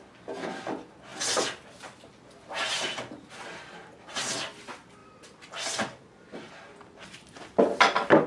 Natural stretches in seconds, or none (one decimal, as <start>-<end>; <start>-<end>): 0.0-5.0